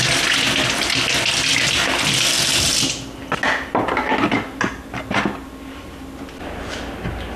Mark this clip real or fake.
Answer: real